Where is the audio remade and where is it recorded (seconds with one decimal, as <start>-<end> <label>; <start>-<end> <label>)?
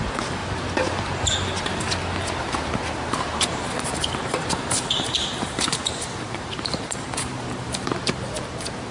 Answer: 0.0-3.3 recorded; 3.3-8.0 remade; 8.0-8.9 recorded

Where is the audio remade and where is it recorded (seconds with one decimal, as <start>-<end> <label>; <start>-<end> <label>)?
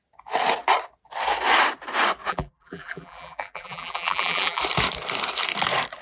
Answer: 0.0-2.3 recorded; 2.3-4.6 remade; 4.6-6.0 recorded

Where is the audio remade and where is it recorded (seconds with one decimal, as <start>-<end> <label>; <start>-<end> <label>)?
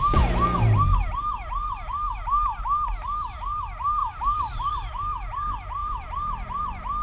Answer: 0.0-4.0 recorded; 4.0-4.7 remade; 4.7-5.8 recorded; 5.8-6.6 remade; 6.6-7.0 recorded